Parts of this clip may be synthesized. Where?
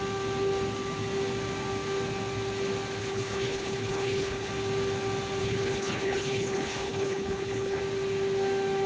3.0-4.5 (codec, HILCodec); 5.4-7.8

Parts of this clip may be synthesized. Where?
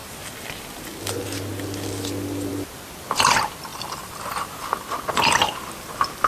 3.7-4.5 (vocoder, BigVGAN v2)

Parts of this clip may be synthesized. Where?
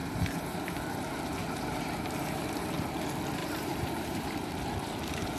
0.0-0.8 (vocoder, BigVGAN v2); 1.4-2.4; 3.4-4.5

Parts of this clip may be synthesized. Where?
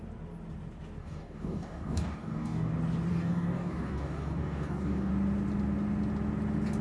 1.0-2.7 (codec, DAC); 3.1-5.1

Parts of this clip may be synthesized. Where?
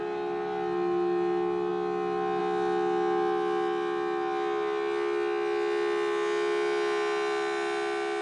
none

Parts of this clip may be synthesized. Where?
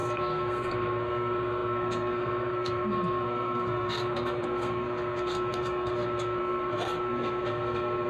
0.0-8.1 (codec, SNAC)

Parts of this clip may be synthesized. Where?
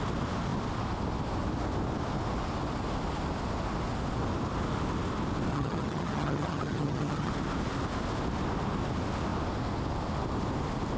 5.5-7.3 (vocoder, HiFi-GAN)